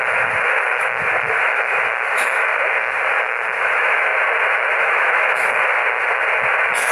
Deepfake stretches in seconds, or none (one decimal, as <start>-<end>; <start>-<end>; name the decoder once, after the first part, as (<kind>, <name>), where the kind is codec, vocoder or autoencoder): 0.0-2.5 (autoencoder, DAC-VAE); 3.1-4.1; 4.8-5.8